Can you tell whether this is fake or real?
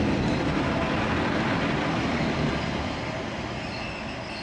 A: real